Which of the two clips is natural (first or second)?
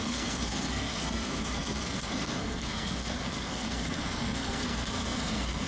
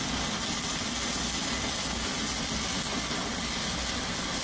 second